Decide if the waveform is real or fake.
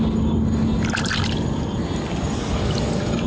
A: real